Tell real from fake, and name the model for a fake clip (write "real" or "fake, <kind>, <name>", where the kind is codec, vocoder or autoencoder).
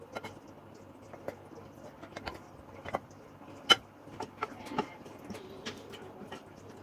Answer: real